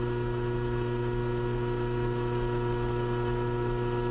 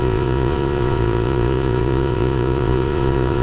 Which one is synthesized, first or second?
second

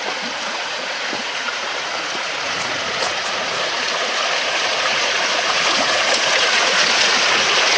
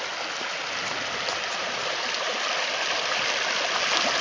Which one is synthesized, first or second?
first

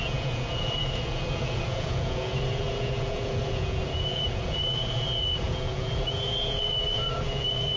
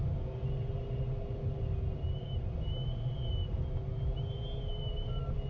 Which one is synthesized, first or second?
first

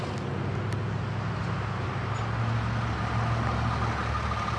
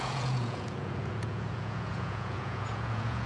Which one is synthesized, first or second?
second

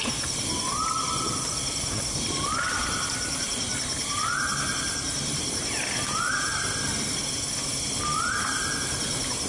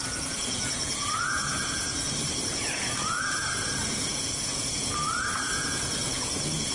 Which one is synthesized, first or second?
second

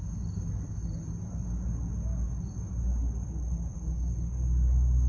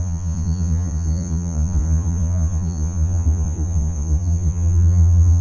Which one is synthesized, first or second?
second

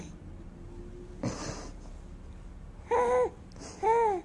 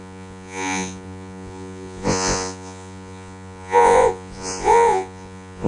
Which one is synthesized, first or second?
second